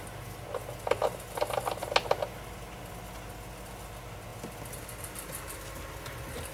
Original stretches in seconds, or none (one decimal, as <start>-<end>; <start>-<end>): 0.0-6.5